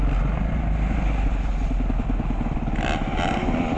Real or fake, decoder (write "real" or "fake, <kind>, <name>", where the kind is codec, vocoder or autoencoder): real